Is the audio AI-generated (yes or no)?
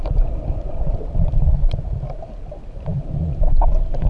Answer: yes